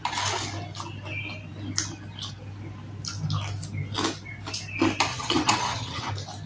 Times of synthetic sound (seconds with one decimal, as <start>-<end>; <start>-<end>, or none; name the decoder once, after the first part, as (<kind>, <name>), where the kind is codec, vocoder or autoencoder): 5.1-6.1 (vocoder, HiFi-GAN)